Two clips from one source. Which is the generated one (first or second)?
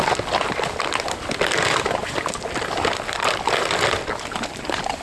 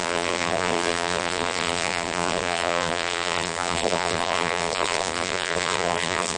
second